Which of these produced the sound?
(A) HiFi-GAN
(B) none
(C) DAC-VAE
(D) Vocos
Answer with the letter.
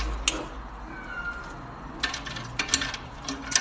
B